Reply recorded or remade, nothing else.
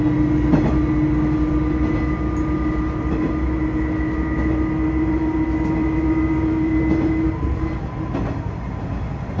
recorded